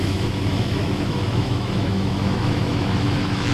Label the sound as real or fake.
fake